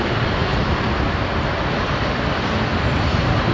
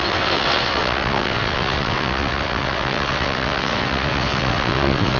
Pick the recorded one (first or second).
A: first